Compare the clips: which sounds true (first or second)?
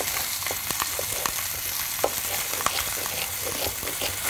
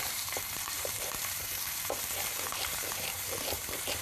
first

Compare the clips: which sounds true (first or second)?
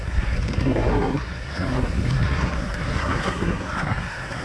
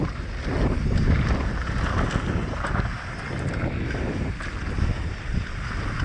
second